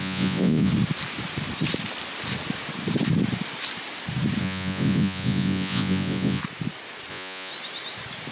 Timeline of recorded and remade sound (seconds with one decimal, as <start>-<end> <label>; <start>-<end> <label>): 0.0-0.7 remade; 0.7-4.4 recorded; 4.4-6.4 remade; 6.4-7.1 recorded; 7.1-7.5 remade; 7.5-8.3 recorded

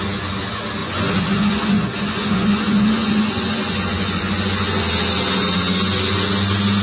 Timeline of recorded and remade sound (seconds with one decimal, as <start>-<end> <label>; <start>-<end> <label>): 0.0-0.8 recorded; 0.8-4.8 remade; 4.8-6.8 recorded

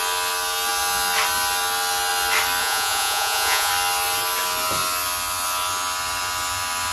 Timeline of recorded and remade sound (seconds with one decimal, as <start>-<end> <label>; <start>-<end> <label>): 0.0-2.6 recorded; 2.6-3.7 remade; 3.7-6.9 recorded

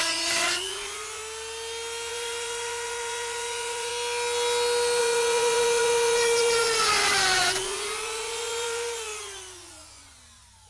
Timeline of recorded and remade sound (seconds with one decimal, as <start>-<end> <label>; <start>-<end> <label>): 0.0-1.2 remade; 1.2-2.1 recorded; 2.1-3.9 remade; 3.9-5.0 recorded; 5.0-10.7 remade

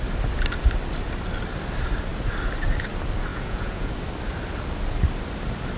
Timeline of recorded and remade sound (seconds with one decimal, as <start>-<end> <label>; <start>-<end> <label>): 0.0-3.3 recorded; 3.3-3.9 remade; 3.9-5.8 recorded

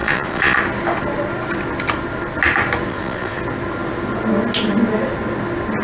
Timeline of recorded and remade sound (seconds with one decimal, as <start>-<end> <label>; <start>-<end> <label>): 0.0-0.6 remade; 0.6-2.9 recorded; 2.9-3.4 remade; 3.4-5.8 recorded

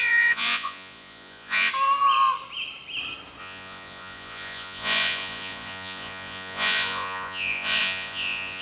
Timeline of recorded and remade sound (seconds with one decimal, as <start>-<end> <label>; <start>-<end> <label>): 0.0-1.7 remade; 1.7-3.4 recorded; 3.4-8.6 remade